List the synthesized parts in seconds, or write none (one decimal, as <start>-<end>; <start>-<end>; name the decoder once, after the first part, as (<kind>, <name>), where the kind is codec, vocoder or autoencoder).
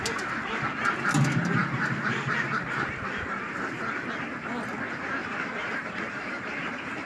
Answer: 1.6-3.8 (vocoder, BigVGAN v2); 5.2-7.1